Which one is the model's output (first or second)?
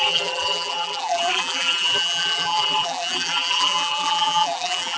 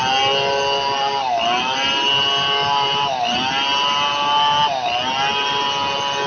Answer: first